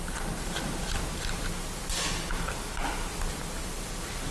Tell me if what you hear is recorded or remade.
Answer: remade